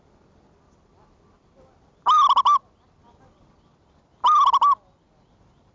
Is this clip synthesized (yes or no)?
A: no